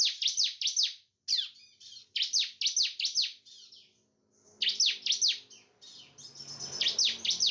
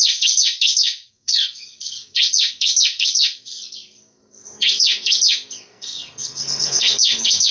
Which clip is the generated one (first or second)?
second